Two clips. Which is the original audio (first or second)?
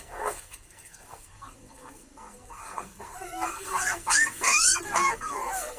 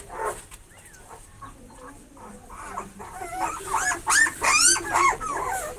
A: second